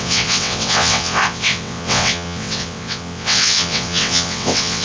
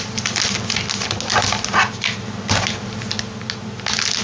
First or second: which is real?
second